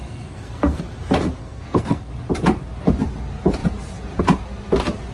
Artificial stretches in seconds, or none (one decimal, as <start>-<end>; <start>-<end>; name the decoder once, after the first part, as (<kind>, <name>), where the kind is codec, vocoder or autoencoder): 0.0-0.8 (codec, SNAC); 1.4-2.1